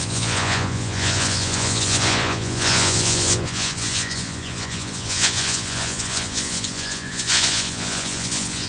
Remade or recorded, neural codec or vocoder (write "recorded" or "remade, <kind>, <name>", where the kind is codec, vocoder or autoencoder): remade, vocoder, Vocos